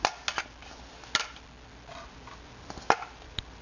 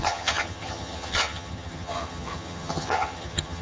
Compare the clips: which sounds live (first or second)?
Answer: first